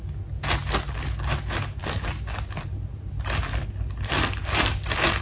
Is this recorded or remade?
recorded